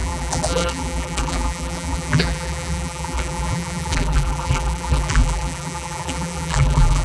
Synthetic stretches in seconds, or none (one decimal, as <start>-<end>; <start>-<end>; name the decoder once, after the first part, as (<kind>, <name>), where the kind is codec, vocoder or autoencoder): 0.0-7.0 (vocoder, BigVGAN v2)